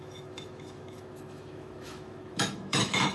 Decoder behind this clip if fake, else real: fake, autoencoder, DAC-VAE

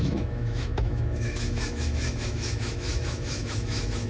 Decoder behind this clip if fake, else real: fake, autoencoder, DAC-VAE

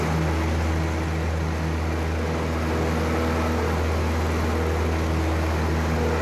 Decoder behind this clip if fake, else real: real